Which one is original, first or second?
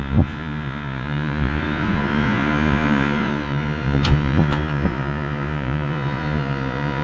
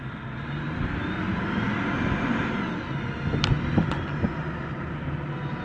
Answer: second